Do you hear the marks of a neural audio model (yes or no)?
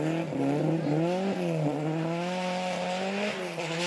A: no